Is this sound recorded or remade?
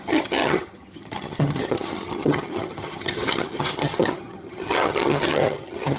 remade